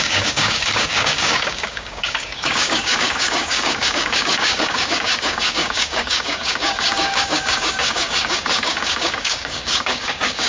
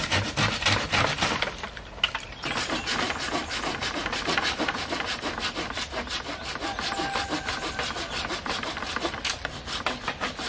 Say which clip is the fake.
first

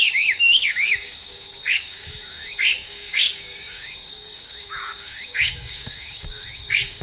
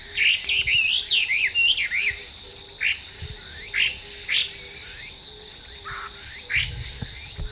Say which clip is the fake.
first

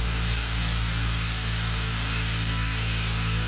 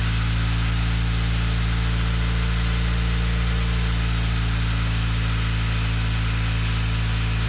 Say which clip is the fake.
first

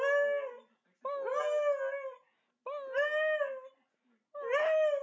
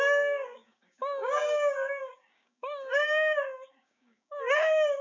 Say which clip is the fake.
second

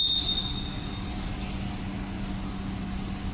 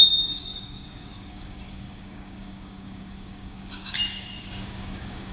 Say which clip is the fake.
second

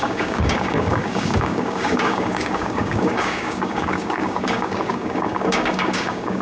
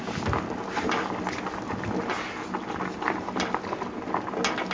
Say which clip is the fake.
first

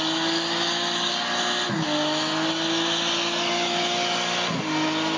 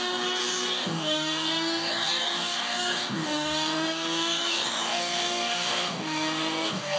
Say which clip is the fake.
second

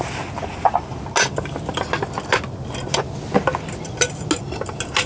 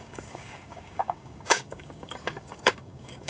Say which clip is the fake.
second